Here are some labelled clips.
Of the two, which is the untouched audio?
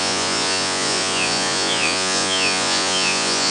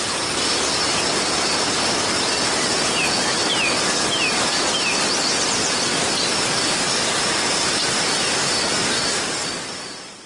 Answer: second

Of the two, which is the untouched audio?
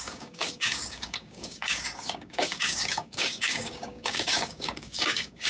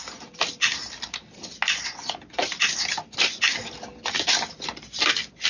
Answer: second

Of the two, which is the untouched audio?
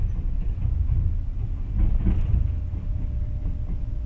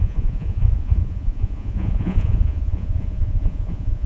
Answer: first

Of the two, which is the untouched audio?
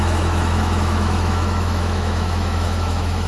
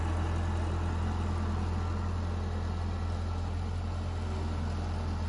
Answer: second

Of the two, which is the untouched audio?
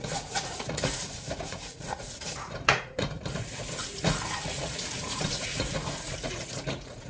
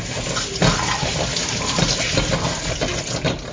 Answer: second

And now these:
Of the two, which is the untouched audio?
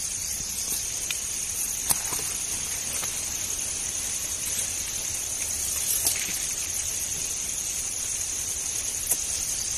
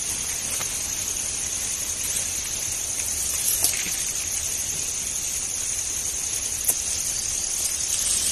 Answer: second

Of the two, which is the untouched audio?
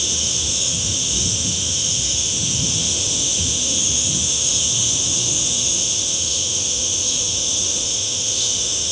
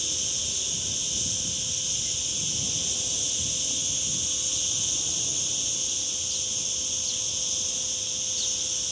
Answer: second